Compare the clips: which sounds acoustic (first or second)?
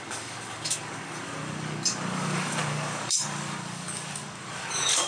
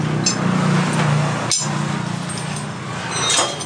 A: second